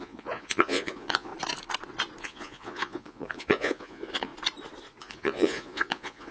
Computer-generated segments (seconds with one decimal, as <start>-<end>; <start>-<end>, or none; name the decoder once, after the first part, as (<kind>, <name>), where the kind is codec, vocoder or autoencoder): 0.0-1.3 (vocoder, Vocos); 2.2-4.3; 5.0-6.3